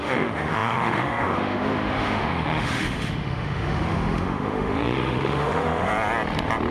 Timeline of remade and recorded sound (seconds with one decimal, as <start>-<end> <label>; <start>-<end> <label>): 0.0-5.9 remade; 5.9-6.7 recorded